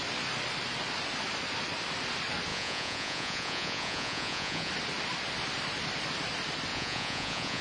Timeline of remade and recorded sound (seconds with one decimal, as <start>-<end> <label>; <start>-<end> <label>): 0.0-2.5 recorded; 2.5-4.7 remade; 4.7-6.7 recorded; 6.7-7.6 remade